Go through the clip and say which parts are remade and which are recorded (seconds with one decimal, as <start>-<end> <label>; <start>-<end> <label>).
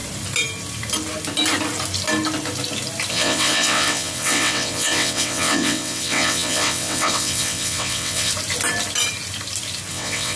0.0-3.1 recorded; 3.1-8.3 remade; 8.3-9.9 recorded; 9.9-10.4 remade